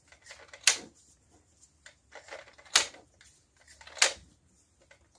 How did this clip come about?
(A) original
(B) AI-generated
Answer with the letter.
A